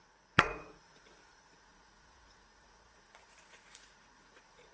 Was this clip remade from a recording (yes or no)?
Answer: yes